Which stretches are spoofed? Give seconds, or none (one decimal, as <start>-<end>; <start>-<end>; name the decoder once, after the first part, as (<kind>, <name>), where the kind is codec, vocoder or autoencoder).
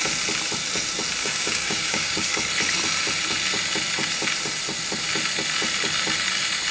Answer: 1.2-2.3 (codec, DAC)